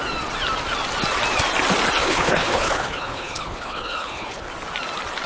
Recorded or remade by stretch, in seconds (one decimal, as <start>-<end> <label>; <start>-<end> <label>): 0.0-2.0 recorded; 2.0-4.5 remade; 4.5-5.3 recorded